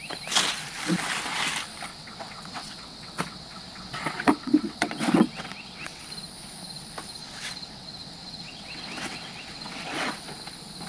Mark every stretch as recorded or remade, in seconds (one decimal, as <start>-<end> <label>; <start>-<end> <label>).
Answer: 0.0-1.9 recorded; 1.9-6.0 remade; 6.0-7.2 recorded; 7.2-10.1 remade; 10.1-10.9 recorded